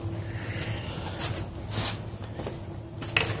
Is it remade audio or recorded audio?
recorded